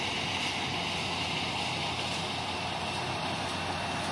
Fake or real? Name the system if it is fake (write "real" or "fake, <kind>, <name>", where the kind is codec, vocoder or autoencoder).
real